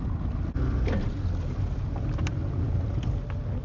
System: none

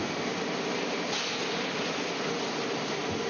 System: none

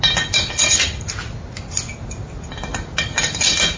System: none